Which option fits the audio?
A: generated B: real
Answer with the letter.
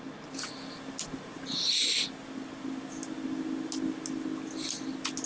B